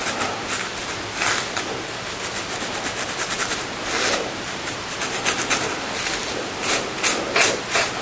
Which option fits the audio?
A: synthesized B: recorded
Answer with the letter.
B